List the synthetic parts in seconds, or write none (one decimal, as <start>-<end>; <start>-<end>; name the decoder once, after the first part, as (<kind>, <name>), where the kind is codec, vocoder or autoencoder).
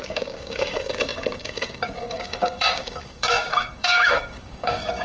0.0-5.0 (codec, DAC)